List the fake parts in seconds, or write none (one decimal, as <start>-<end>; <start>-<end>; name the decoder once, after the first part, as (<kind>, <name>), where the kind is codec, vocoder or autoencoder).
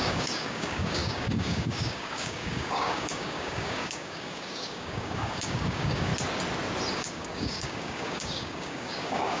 0.0-6.1 (codec, DAC); 6.9-9.4